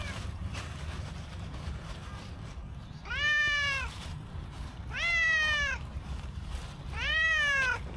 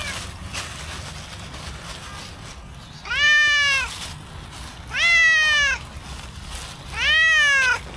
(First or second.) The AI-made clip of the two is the first